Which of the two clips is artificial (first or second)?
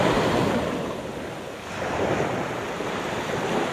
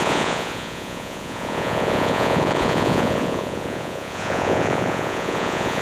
second